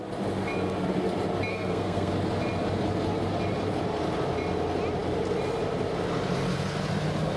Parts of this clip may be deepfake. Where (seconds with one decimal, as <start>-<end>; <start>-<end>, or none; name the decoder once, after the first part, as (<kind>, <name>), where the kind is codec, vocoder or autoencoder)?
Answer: 1.5-2.1 (codec, SNAC)